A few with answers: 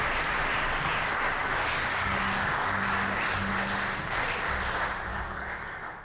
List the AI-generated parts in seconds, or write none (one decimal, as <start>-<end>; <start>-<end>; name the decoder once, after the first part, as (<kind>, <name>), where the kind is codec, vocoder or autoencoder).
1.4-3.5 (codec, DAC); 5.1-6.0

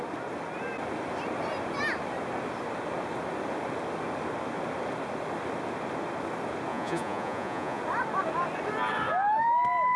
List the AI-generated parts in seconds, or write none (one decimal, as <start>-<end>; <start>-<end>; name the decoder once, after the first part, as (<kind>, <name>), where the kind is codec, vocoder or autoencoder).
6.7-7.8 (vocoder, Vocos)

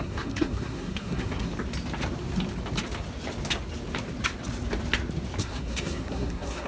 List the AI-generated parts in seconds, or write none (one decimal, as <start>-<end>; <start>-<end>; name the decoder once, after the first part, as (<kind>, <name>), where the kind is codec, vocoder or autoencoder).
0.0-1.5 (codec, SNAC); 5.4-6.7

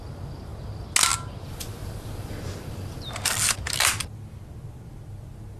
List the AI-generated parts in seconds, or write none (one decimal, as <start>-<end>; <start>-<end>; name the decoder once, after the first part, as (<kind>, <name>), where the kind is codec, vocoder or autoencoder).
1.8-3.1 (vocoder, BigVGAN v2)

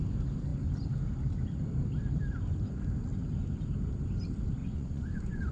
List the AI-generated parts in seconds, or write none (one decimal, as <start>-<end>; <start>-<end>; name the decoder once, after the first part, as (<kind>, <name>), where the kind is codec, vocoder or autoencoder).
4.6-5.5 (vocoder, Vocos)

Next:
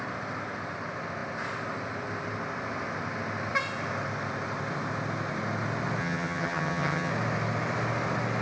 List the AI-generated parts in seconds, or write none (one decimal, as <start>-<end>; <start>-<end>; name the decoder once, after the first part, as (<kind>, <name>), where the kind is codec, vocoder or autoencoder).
6.0-7.1 (vocoder, HiFi-GAN)

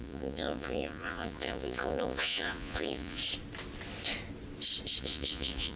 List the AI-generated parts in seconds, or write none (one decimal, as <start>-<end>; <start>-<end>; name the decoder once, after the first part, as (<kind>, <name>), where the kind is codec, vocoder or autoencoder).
0.0-3.2 (vocoder, Vocos); 5.0-5.8

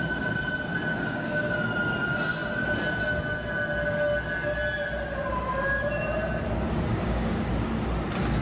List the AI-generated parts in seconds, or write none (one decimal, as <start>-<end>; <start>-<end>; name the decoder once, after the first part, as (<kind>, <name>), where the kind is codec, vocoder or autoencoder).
0.9-1.5 (codec, DAC); 6.9-7.5